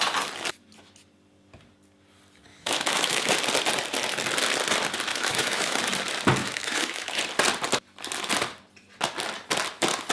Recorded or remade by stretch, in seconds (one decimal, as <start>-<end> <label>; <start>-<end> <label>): 0.0-2.5 recorded; 2.5-3.3 remade; 3.3-5.1 recorded; 5.1-5.8 remade; 5.8-6.4 recorded; 6.4-7.2 remade; 7.2-10.1 recorded